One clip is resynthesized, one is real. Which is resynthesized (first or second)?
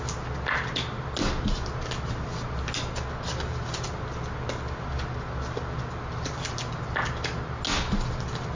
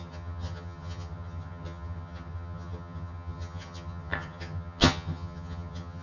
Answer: second